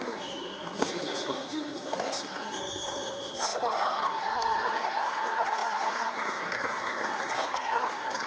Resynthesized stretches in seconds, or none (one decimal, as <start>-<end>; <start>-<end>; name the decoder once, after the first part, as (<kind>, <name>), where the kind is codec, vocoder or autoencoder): 0.0-8.3 (codec, SNAC)